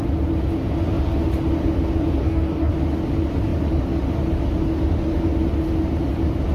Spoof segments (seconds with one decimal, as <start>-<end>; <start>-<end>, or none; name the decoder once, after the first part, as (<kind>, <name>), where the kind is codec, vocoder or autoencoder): 2.2-2.7 (codec, DAC)